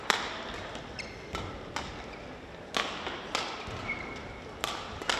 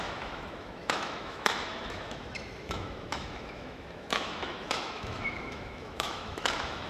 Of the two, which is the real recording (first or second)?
first